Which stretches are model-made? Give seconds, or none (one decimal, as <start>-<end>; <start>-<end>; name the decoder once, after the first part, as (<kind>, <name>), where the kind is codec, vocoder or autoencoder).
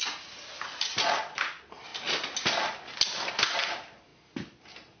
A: none